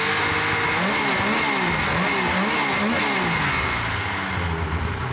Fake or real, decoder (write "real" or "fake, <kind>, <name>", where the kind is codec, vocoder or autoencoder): real